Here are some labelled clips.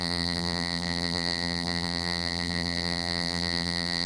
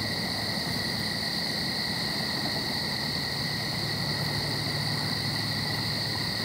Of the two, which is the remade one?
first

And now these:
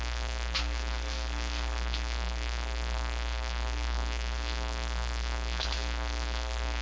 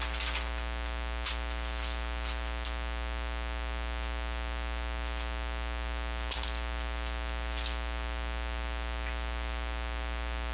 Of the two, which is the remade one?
first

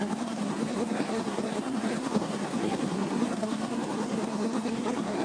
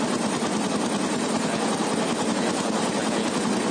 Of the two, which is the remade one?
first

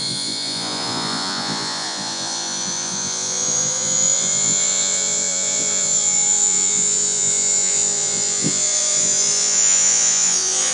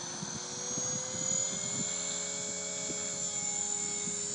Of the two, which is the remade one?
first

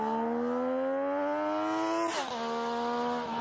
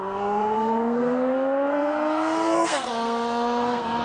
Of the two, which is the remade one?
second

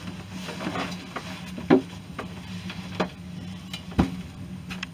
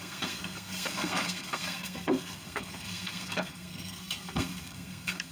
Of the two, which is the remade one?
second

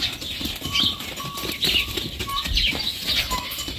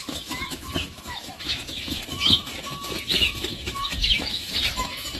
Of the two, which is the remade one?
second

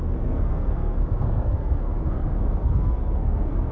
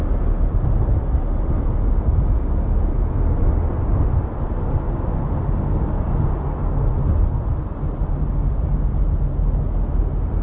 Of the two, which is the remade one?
first